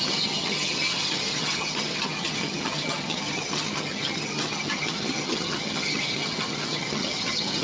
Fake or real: fake